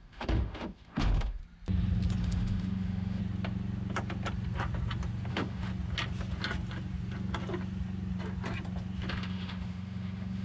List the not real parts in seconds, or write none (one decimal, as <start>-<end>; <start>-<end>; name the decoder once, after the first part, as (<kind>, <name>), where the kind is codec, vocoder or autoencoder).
0.0-1.4 (autoencoder, DAC-VAE); 2.2-3.2; 5.3-5.7; 9.1-10.4